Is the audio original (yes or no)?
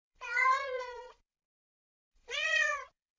no